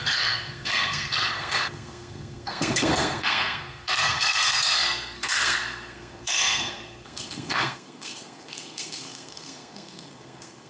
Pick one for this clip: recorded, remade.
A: remade